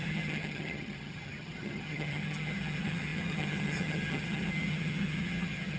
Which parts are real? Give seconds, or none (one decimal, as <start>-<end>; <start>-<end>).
none